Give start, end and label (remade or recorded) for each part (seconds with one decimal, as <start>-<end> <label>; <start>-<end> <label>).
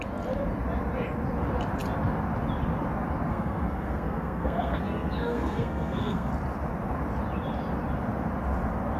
0.0-3.3 recorded; 3.3-6.3 remade; 6.3-9.0 recorded